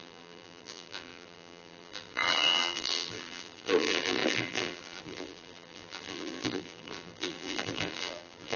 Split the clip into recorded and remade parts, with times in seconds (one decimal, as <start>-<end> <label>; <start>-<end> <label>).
0.0-8.6 remade